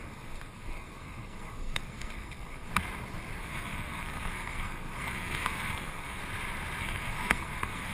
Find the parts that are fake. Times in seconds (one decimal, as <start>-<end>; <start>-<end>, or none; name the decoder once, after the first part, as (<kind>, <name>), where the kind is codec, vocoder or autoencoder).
0.0-2.7 (codec, SNAC); 3.4-6.2; 6.8-7.9